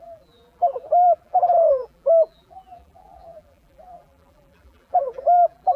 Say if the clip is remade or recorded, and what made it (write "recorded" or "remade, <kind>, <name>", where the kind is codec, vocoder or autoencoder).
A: remade, vocoder, BigVGAN v2